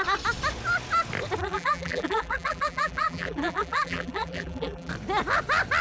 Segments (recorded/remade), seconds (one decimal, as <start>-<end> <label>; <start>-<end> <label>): 0.0-1.4 recorded; 1.4-4.9 remade; 4.9-5.8 recorded